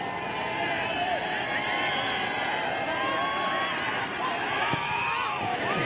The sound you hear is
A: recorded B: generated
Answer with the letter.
A